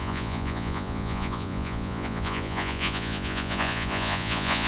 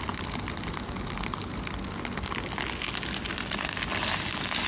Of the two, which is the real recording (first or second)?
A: second